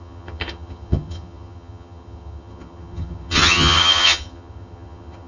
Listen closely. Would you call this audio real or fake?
fake